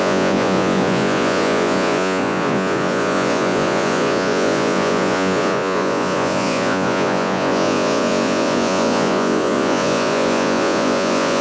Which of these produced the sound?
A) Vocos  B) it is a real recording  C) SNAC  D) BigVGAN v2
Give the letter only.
A